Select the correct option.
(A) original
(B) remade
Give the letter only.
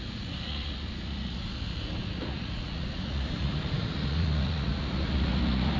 B